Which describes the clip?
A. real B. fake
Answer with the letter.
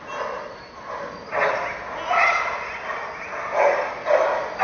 A